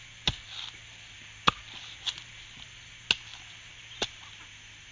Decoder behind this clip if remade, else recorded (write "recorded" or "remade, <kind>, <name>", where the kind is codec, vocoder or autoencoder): recorded